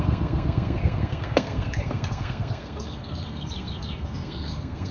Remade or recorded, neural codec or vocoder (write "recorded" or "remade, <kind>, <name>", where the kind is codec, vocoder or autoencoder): remade, codec, SNAC